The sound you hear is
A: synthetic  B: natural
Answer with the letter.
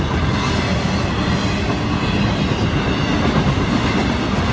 B